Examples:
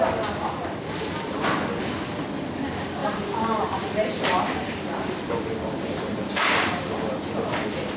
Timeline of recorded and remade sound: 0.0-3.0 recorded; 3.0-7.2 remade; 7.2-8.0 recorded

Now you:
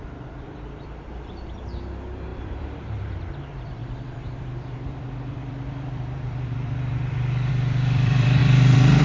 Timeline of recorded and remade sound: 0.0-9.0 remade

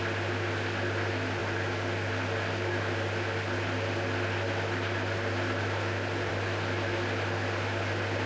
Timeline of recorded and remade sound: 0.0-8.3 recorded